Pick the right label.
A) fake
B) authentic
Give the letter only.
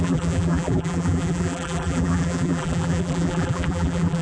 A